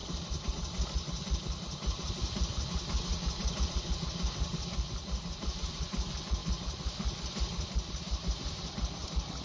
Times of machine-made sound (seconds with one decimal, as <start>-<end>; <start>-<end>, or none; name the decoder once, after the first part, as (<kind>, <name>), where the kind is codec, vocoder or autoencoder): none

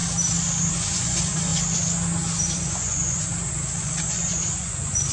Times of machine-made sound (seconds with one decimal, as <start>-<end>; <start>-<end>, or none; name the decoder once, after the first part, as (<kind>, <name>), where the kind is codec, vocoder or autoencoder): 0.7-1.5 (vocoder, Vocos); 2.4-3.3; 3.8-5.1

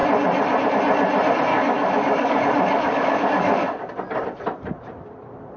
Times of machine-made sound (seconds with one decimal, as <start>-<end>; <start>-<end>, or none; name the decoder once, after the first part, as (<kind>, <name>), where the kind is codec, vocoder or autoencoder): 1.5-3.9 (codec, DAC)

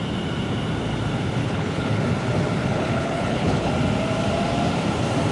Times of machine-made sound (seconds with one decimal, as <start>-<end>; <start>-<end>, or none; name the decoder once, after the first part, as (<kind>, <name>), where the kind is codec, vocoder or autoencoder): 1.4-2.0 (codec, HILCodec); 2.6-3.7

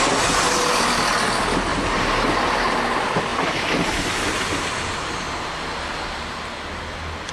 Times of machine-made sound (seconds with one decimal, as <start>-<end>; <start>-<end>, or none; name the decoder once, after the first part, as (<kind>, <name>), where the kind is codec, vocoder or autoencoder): 1.7-2.4 (vocoder, BigVGAN v2)

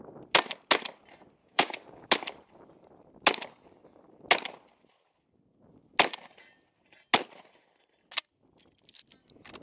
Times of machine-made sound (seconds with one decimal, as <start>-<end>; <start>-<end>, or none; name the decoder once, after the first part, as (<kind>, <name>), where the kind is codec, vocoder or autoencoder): 1.4-2.1 (codec, DAC)